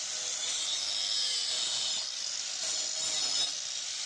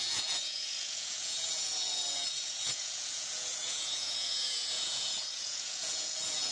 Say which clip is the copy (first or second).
second